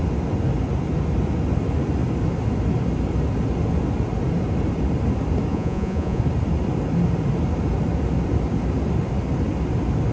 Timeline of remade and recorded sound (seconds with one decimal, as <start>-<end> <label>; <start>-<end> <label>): 0.0-5.5 recorded; 5.5-6.2 remade; 6.2-10.1 recorded